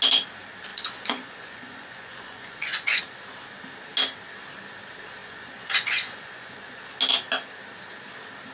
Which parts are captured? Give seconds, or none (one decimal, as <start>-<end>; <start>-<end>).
0.0-0.7; 3.0-5.2; 6.8-8.5